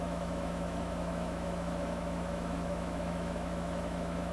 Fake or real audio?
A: fake